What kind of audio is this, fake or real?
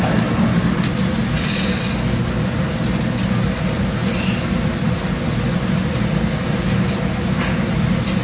real